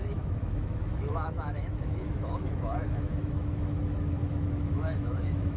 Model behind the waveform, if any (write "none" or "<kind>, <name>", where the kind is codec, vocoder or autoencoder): autoencoder, DAC-VAE